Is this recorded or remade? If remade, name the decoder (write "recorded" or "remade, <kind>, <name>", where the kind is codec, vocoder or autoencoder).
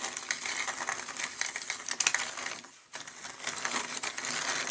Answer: recorded